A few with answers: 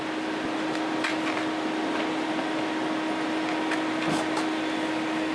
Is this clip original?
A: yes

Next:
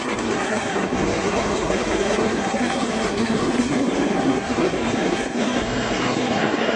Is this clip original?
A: no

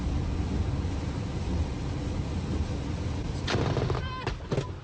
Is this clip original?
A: yes